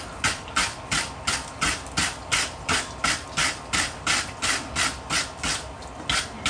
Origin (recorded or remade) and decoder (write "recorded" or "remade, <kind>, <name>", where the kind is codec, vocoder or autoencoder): recorded